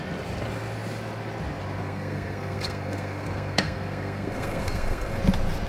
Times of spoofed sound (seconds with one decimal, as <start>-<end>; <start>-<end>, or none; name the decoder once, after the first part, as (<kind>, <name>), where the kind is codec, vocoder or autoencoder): 1.8-5.2 (codec, SNAC)